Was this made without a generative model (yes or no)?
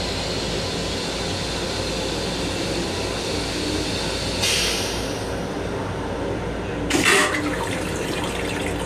yes